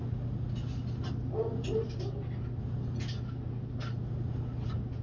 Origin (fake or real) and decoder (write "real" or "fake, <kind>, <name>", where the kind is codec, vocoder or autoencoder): real